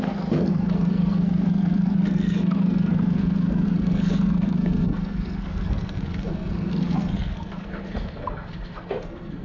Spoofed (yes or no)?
yes